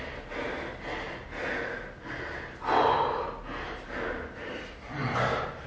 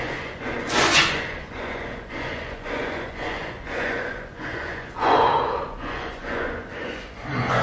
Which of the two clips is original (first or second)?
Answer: first